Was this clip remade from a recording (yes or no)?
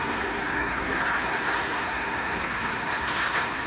yes